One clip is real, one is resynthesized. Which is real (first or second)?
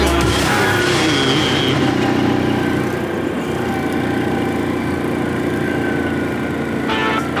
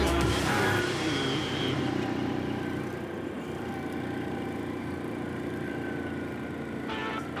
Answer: first